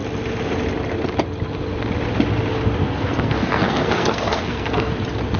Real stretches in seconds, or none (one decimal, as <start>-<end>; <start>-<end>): 0.0-2.8; 4.9-5.4